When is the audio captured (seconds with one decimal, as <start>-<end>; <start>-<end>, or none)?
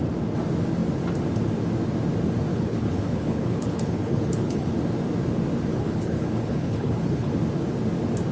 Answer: 0.0-2.5; 4.7-5.7; 7.3-8.3